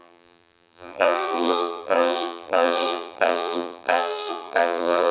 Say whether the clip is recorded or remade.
remade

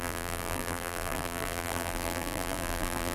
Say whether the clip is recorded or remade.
remade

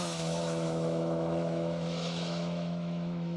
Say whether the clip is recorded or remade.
remade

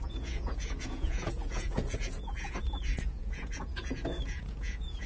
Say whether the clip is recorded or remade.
remade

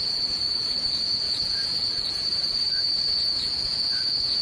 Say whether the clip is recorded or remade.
remade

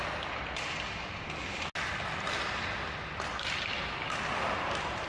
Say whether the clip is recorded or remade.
recorded